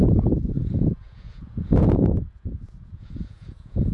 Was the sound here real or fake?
fake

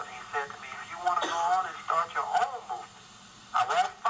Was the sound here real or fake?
real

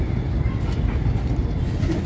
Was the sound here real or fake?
real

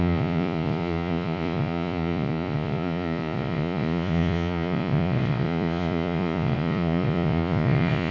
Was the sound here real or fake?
fake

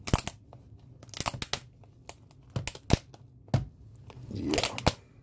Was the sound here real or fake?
real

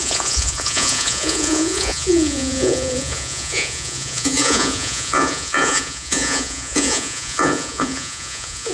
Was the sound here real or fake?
fake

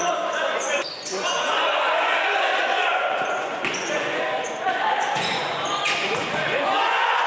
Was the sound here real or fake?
fake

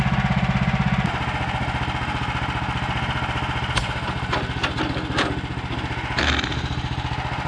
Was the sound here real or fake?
real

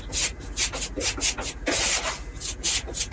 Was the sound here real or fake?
real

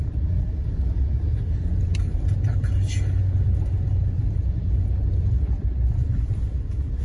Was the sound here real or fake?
real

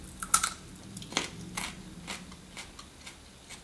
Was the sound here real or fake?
real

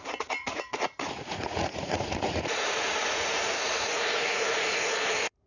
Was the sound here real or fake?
fake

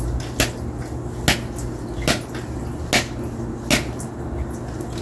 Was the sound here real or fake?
real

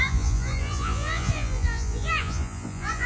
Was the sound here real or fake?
fake